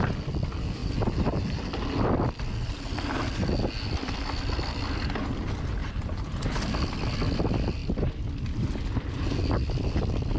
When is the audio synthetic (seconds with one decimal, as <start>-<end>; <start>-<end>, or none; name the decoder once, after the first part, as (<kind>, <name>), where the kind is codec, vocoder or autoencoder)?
5.8-6.4 (vocoder, BigVGAN v2)